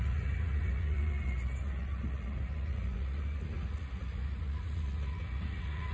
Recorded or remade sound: remade